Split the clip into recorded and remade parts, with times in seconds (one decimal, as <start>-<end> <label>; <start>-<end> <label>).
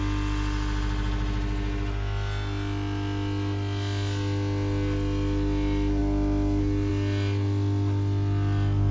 0.0-8.9 recorded